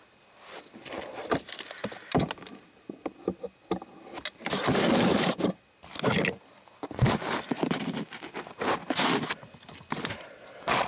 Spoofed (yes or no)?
no